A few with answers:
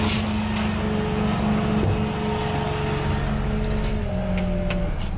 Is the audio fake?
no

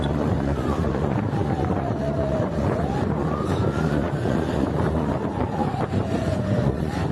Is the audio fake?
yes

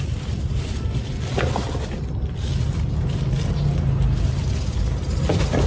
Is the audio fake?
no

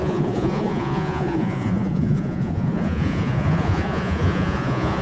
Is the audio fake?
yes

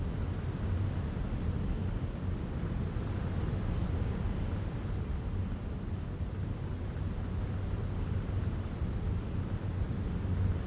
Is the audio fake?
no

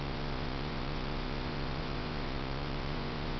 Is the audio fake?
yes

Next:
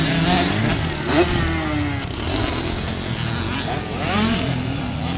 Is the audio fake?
no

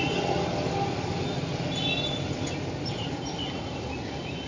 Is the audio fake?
no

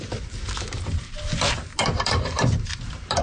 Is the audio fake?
no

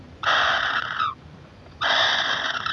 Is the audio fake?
yes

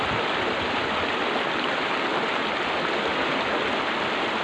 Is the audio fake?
no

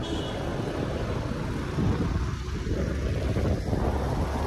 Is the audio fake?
no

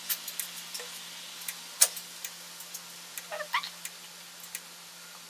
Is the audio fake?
no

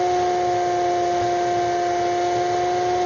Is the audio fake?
no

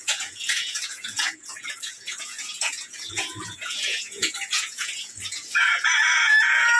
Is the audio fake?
yes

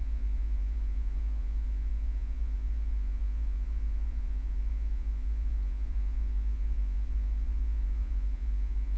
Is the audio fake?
yes